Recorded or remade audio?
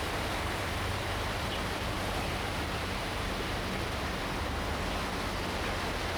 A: recorded